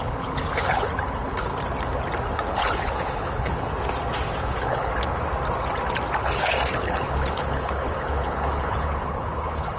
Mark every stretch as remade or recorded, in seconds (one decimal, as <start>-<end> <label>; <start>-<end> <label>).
0.0-1.5 remade; 1.5-2.5 recorded; 2.5-3.7 remade; 3.7-4.4 recorded; 4.4-4.9 remade; 4.9-6.2 recorded; 6.2-9.8 remade